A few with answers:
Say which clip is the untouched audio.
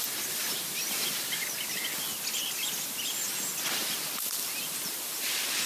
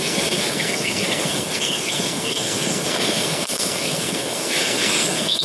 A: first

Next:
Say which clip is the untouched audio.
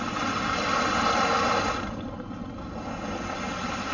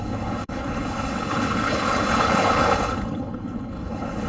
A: first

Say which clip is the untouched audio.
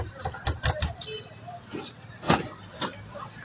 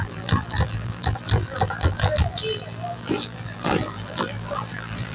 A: first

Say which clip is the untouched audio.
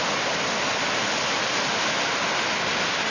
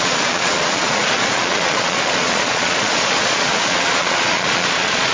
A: first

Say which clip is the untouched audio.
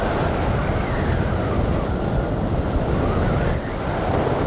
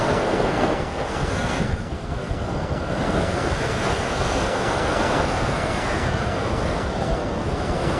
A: first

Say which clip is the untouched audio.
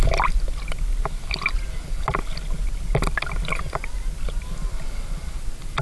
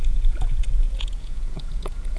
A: first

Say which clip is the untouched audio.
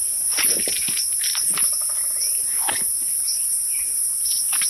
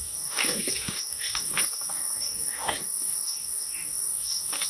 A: first